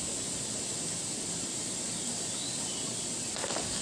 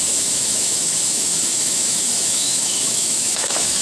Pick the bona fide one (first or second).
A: first